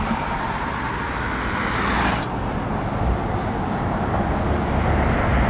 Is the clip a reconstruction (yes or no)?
no